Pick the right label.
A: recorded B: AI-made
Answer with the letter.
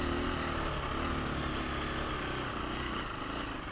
A